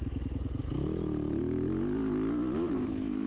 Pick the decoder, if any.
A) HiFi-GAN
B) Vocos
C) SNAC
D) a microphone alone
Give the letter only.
D